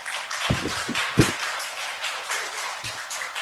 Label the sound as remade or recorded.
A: recorded